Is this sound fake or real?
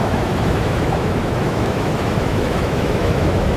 fake